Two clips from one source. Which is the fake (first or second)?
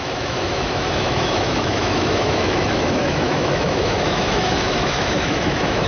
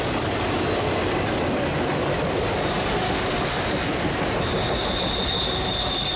first